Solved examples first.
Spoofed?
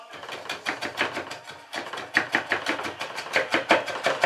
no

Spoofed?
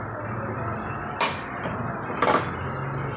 no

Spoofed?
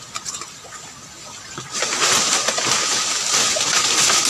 no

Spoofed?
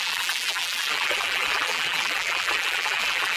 yes